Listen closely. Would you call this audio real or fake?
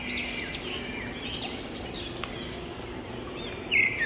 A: real